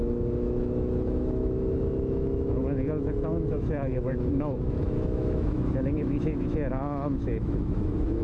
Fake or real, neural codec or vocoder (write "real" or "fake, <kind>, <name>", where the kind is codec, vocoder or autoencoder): fake, autoencoder, DAC-VAE